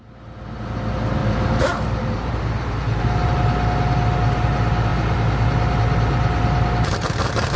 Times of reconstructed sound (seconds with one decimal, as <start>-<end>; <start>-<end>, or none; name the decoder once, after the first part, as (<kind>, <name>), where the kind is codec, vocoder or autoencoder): 1.2-3.0 (vocoder, BigVGAN v2)